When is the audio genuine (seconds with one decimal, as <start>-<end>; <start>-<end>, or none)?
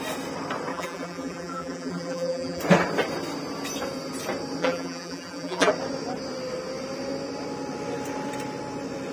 0.0-0.7; 2.6-4.6; 5.7-9.1